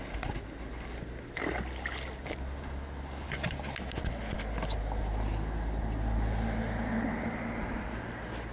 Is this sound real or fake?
real